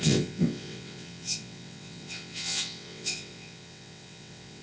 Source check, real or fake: fake